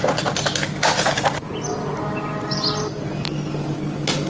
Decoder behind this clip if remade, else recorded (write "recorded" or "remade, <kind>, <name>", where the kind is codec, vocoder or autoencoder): recorded